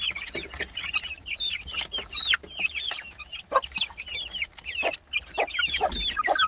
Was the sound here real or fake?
real